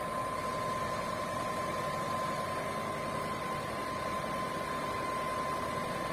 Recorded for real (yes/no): yes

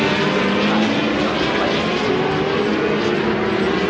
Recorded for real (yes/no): yes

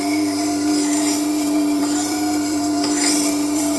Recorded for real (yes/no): no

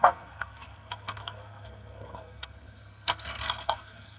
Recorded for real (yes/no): no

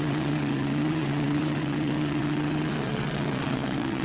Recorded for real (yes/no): no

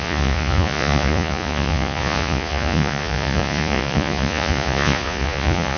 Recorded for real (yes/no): no